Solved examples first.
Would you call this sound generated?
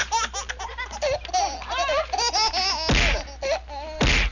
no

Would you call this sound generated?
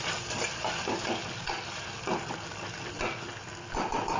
no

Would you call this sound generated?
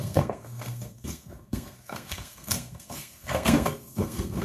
yes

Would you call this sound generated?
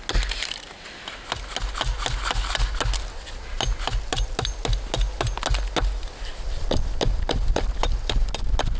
no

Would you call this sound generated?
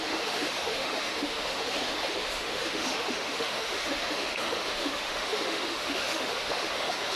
yes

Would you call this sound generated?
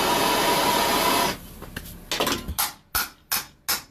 no